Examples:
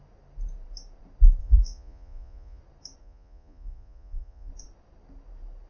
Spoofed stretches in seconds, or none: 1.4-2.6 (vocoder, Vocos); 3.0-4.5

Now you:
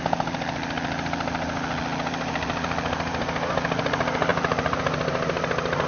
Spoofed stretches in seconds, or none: none

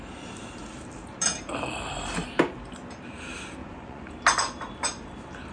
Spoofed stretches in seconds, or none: 3.6-4.1 (vocoder, Vocos)

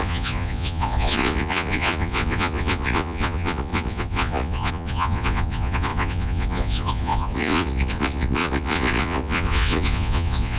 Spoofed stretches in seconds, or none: 0.0-10.6 (vocoder, Vocos)